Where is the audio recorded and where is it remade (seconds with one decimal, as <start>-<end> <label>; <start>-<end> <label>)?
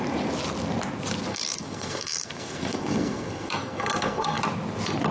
0.0-1.3 recorded; 1.3-4.4 remade; 4.4-5.1 recorded